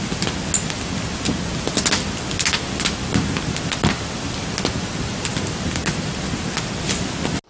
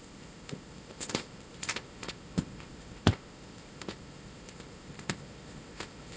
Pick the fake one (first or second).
second